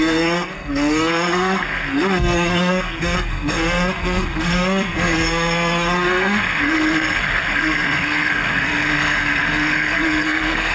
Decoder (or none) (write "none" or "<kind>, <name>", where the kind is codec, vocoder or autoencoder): codec, SNAC